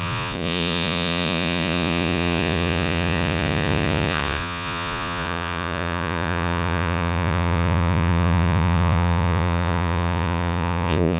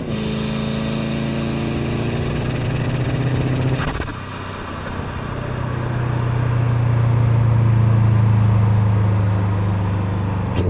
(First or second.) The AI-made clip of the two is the first